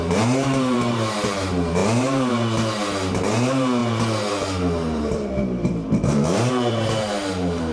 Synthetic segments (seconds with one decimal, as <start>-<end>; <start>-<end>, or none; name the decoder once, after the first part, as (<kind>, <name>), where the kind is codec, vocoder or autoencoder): 0.0-7.7 (vocoder, BigVGAN v2)